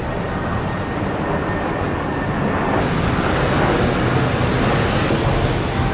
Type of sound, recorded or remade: recorded